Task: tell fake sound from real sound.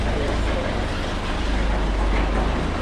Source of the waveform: real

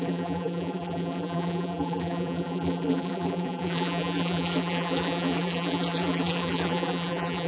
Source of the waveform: fake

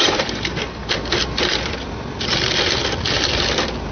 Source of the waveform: fake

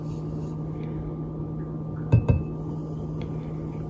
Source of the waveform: real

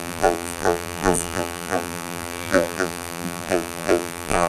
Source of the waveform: fake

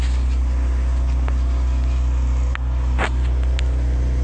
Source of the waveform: real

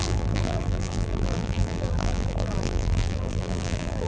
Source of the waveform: fake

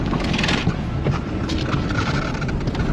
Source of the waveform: fake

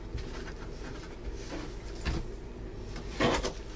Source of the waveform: real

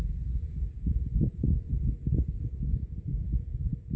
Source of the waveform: fake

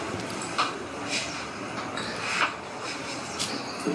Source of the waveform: real